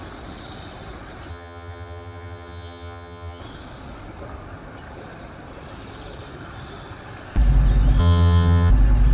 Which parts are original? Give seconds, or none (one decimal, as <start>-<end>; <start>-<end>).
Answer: 0.0-1.3; 3.4-8.0; 8.7-9.1